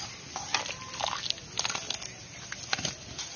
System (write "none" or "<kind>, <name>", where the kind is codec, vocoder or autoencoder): none